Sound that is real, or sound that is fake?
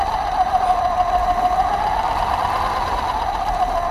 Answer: real